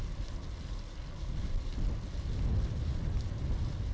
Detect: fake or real real